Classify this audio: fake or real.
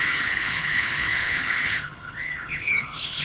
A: fake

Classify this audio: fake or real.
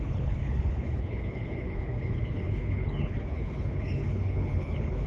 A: fake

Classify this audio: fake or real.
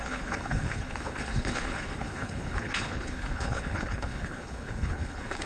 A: fake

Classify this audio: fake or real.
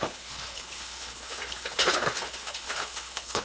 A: fake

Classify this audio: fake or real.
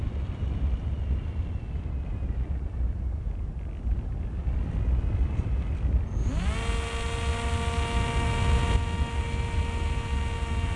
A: real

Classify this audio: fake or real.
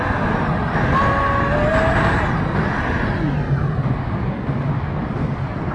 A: real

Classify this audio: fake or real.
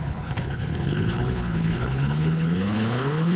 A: fake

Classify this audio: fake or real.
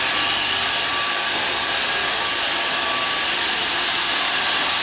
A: real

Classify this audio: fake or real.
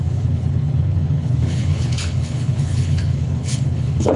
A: fake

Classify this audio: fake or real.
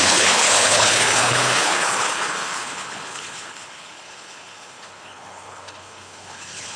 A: fake